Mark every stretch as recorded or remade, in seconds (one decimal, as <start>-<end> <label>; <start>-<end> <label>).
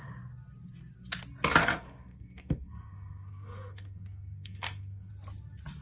0.0-1.6 recorded; 1.6-5.1 remade; 5.1-5.8 recorded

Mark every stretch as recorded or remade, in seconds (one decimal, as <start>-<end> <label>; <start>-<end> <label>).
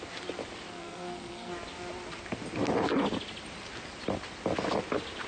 0.0-0.7 recorded; 0.7-1.5 remade; 1.5-5.3 recorded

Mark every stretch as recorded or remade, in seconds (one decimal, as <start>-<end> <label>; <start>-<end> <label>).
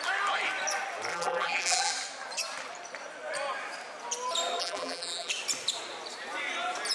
0.0-1.1 recorded; 1.1-1.9 remade; 1.9-4.6 recorded; 4.6-5.3 remade; 5.3-6.9 recorded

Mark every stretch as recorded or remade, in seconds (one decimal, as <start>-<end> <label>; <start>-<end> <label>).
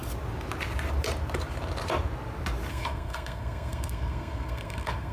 0.0-2.7 recorded; 2.7-5.1 remade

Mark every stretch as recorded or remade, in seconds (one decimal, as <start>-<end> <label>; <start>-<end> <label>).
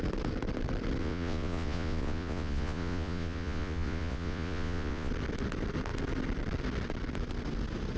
0.0-1.0 recorded; 1.0-5.1 remade; 5.1-8.0 recorded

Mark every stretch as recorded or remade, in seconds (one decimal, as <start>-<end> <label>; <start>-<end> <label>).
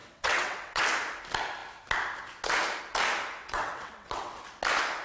0.0-0.8 remade; 0.8-3.4 recorded; 3.4-4.4 remade; 4.4-5.0 recorded